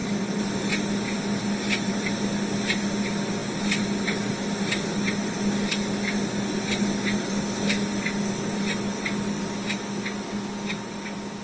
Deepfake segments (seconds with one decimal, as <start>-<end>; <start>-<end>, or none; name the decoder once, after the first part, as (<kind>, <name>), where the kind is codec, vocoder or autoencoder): none